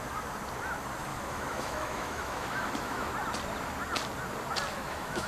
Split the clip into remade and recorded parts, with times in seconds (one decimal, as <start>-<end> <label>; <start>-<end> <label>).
0.0-1.1 recorded; 1.1-3.1 remade; 3.1-4.7 recorded; 4.7-5.3 remade